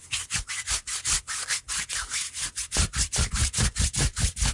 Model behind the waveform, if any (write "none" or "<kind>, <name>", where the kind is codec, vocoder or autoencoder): none